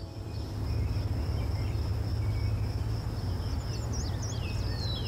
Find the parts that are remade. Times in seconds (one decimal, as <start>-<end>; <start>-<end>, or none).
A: none